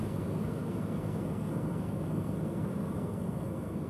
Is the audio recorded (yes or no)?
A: no